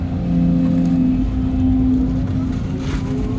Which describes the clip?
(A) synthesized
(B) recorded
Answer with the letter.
B